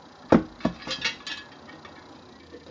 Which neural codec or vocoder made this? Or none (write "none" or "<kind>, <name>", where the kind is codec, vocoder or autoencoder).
none